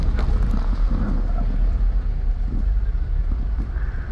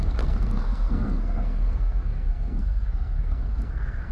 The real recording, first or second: first